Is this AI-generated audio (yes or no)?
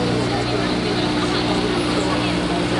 no